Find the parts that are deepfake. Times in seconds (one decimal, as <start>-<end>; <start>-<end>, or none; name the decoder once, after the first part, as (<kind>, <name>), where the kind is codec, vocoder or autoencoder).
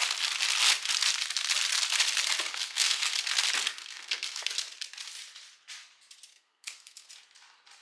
2.5-3.1 (codec, SNAC); 3.8-4.5; 6.3-7.1